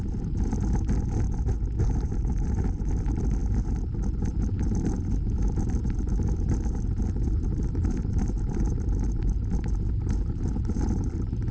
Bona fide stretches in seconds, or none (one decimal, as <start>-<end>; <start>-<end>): none